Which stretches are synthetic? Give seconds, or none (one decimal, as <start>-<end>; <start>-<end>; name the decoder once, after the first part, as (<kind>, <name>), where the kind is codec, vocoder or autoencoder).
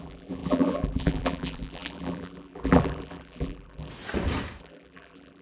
0.0-3.9 (vocoder, BigVGAN v2); 4.6-5.4